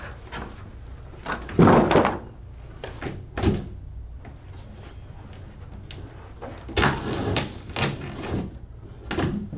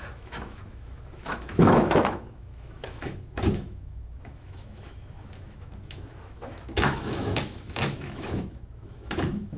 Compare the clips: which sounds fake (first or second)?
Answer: second